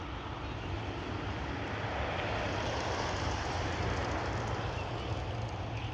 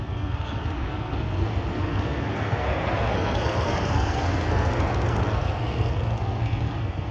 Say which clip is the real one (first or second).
first